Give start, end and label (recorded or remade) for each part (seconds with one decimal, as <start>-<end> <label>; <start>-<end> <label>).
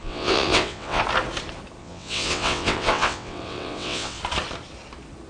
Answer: 0.0-1.0 remade; 1.0-1.8 recorded; 1.8-4.2 remade; 4.2-5.3 recorded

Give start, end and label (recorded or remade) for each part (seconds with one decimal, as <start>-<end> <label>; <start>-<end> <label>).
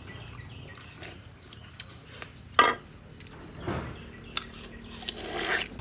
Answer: 0.0-5.8 recorded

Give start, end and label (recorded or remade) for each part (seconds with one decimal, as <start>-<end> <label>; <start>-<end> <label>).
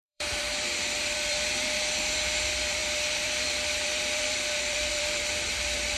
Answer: 0.0-6.0 remade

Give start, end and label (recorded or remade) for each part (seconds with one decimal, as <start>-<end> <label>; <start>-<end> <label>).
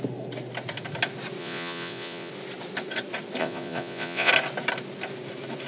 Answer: 0.0-1.4 recorded; 1.4-2.3 remade; 2.3-3.4 recorded; 3.4-4.3 remade; 4.3-5.7 recorded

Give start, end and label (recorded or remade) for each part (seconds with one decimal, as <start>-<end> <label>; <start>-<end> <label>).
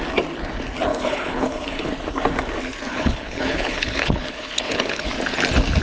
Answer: 0.0-0.9 recorded; 0.9-1.9 remade; 1.9-2.9 recorded; 2.9-5.1 remade; 5.1-5.8 recorded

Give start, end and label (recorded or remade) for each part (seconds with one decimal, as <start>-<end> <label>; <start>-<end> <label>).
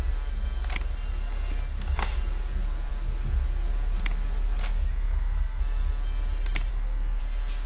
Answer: 0.0-4.9 recorded; 4.9-5.6 remade; 5.6-6.7 recorded; 6.7-7.2 remade; 7.2-7.7 recorded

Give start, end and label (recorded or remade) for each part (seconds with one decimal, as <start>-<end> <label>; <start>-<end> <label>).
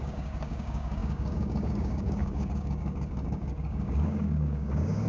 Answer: 0.0-5.1 remade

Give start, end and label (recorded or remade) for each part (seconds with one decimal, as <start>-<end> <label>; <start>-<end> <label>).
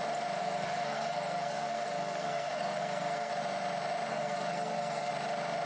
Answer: 0.0-0.4 recorded; 0.4-3.3 remade; 3.3-4.1 recorded; 4.1-5.1 remade; 5.1-5.7 recorded